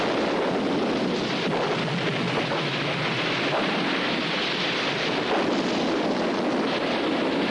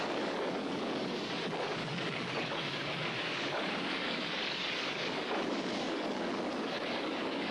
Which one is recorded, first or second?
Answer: first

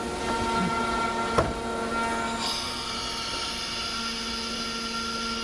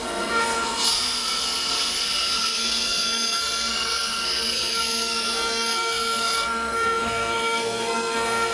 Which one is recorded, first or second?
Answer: first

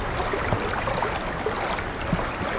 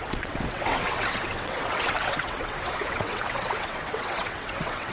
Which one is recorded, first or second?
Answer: first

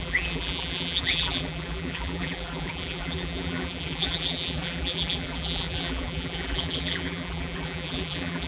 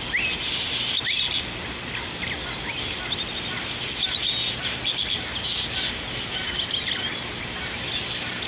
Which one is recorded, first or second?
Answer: second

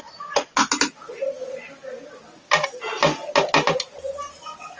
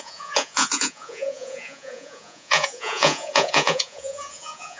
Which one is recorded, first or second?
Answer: first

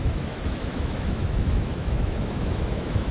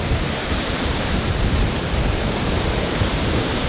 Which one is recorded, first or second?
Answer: second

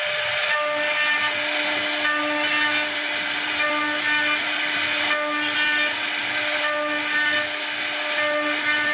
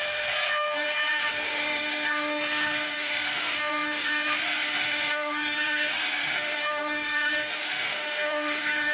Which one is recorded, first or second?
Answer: first